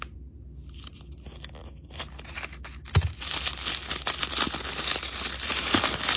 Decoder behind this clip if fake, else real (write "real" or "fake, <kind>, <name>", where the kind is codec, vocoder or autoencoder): real